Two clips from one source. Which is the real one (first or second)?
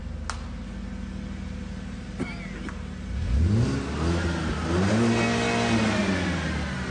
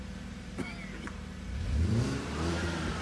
first